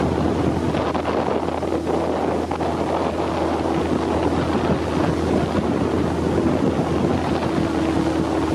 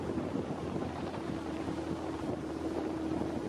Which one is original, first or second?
first